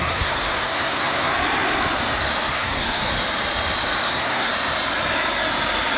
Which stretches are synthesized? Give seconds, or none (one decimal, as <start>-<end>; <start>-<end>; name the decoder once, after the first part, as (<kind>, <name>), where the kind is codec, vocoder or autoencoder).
0.0-1.3 (codec, SNAC); 2.5-3.0; 4.1-4.5